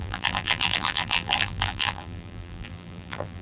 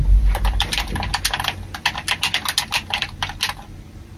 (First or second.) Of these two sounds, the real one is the second